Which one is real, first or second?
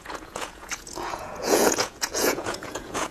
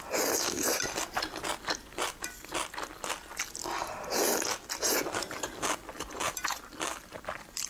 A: second